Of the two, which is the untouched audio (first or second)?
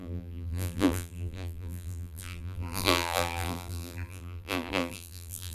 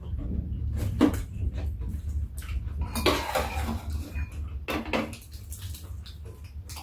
second